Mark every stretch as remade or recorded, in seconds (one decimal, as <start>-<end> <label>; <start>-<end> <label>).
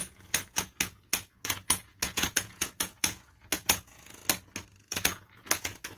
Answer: 0.0-4.2 remade; 4.2-4.8 recorded; 4.8-6.0 remade